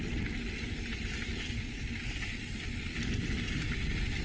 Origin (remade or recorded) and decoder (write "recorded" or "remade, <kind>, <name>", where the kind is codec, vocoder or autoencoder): recorded